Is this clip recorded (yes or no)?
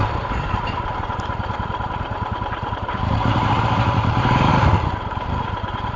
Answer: no